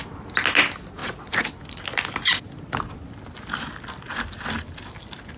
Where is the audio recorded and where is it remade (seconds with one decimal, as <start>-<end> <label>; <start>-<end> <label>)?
0.0-5.4 recorded